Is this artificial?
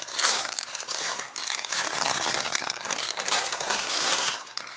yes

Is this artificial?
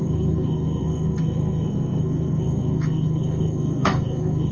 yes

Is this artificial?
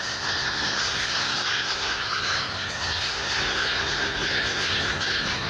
yes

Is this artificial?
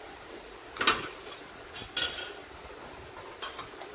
no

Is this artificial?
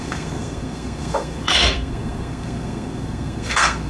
yes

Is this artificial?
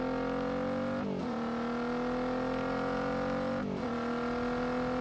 no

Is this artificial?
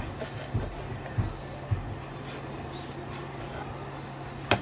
no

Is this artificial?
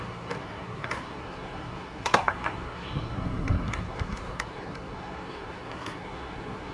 yes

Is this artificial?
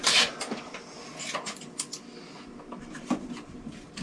no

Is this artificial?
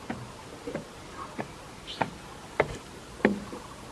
no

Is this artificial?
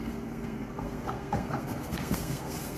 yes